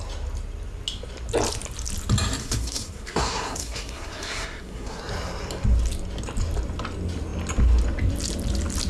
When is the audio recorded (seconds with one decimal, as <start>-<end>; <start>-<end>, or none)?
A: 0.0-2.4; 5.0-8.9